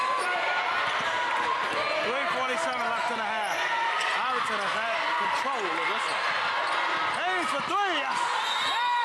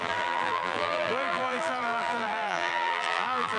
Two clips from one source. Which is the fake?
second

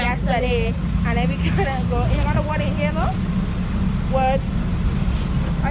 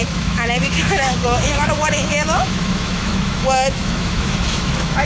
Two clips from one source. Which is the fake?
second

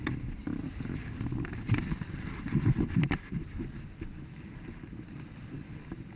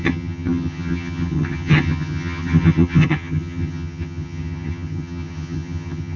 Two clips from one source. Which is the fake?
second